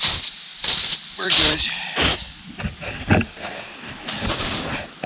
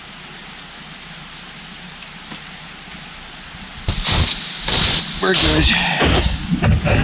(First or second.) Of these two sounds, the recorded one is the second